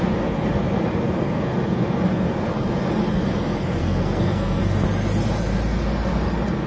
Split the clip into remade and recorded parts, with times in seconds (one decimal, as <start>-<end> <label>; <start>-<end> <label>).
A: 0.0-3.8 recorded; 3.8-4.6 remade; 4.6-6.7 recorded